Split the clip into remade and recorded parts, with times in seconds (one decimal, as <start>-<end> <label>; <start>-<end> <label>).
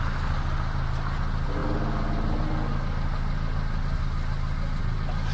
0.0-5.3 recorded